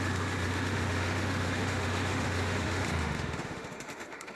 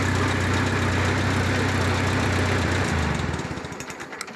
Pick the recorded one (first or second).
second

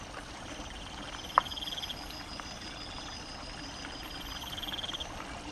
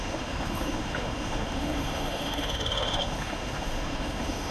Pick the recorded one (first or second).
first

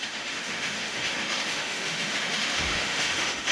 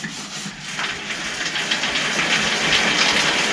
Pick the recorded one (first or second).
second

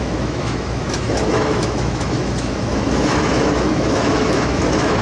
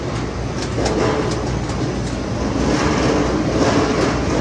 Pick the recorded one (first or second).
second